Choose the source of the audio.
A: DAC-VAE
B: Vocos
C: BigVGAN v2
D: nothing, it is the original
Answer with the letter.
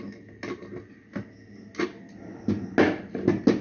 D